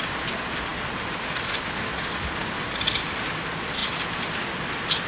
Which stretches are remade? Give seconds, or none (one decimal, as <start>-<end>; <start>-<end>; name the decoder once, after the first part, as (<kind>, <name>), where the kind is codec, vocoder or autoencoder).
0.0-5.1 (vocoder, BigVGAN v2)